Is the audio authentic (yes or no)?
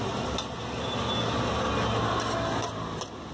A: yes